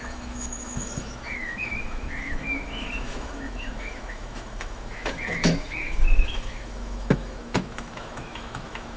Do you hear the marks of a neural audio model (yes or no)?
yes